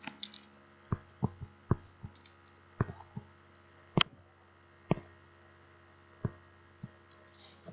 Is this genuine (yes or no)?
yes